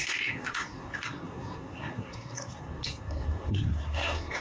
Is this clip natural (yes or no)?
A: no